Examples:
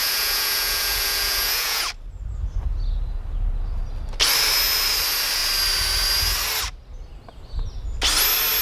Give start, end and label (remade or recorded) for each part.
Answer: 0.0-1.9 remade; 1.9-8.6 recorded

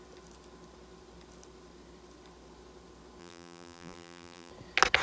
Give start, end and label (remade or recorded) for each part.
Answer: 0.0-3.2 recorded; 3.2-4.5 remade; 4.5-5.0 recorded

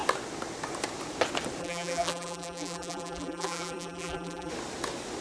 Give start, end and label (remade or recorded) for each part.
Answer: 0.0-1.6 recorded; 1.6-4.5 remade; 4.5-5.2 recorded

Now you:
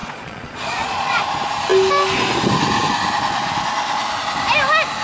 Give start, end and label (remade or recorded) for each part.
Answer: 0.0-1.2 remade; 1.2-5.0 recorded